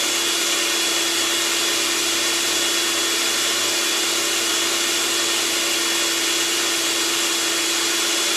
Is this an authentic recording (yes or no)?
yes